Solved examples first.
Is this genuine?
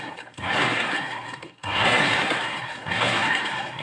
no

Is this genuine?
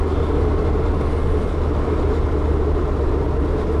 yes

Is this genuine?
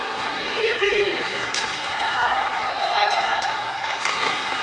no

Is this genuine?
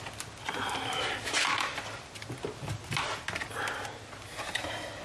yes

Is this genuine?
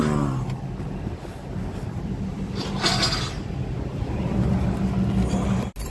yes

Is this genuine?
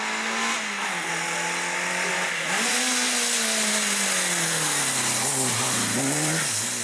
yes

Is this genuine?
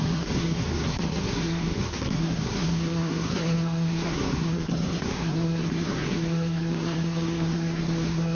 no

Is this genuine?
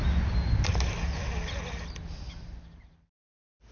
yes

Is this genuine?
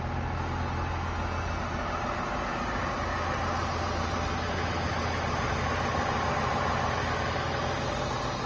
yes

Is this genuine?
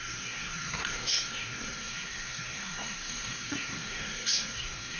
no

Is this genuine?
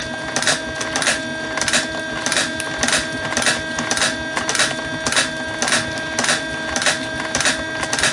yes